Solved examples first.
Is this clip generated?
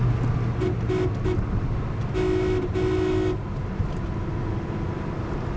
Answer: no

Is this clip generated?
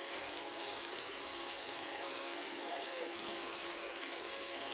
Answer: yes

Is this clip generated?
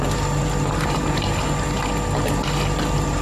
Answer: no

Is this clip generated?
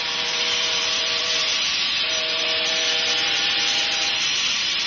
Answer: yes